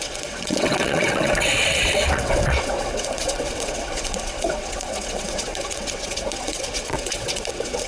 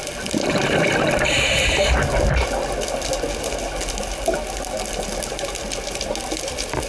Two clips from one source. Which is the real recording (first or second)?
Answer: second